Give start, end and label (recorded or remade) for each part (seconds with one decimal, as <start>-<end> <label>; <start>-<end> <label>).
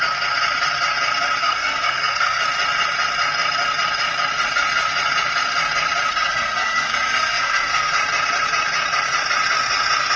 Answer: 0.0-1.4 recorded; 1.4-2.4 remade; 2.4-6.1 recorded; 6.1-7.9 remade; 7.9-10.2 recorded